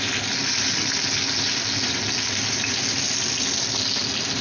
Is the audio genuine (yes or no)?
yes